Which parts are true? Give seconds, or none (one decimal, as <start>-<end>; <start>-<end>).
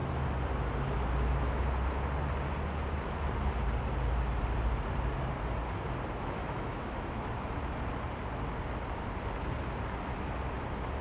0.0-6.4; 7.3-11.0